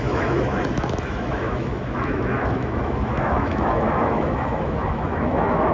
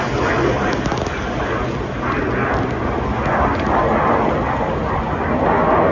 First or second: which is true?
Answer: second